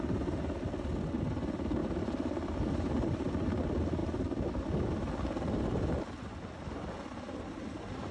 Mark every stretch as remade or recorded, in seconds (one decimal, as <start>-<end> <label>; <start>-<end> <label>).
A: 0.0-1.8 recorded; 1.8-3.3 remade; 3.3-8.1 recorded